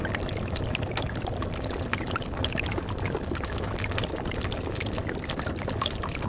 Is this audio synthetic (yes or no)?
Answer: no